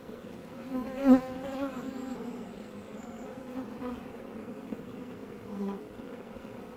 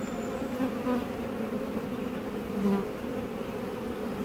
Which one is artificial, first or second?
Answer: first